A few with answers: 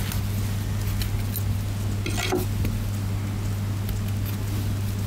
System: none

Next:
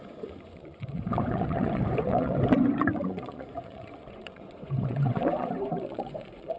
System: vocoder, Vocos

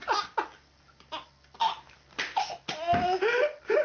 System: none